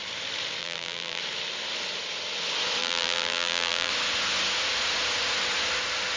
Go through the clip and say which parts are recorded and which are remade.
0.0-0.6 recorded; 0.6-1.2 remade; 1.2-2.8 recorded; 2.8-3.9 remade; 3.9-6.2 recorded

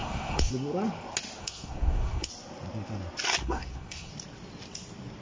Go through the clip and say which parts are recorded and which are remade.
0.0-0.5 remade; 0.5-1.4 recorded; 1.4-2.3 remade; 2.3-3.4 recorded; 3.4-4.1 remade; 4.1-5.2 recorded

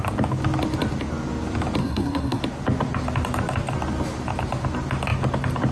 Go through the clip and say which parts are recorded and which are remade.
0.0-1.8 recorded; 1.8-2.4 remade; 2.4-5.7 recorded

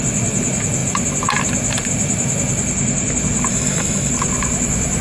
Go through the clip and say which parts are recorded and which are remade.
0.0-3.5 recorded; 3.5-4.1 remade; 4.1-5.0 recorded

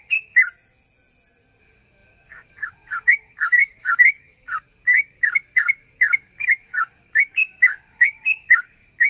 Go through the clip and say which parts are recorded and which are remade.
0.0-0.4 remade; 0.4-1.6 recorded; 1.6-9.1 remade

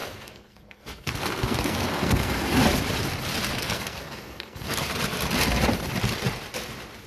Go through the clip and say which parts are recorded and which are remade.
0.0-2.6 remade; 2.6-3.5 recorded; 3.5-4.9 remade; 4.9-7.1 recorded

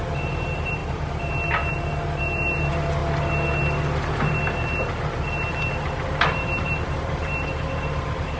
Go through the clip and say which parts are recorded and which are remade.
0.0-0.8 remade; 0.8-1.7 recorded; 1.7-3.0 remade; 3.0-6.3 recorded; 6.3-8.4 remade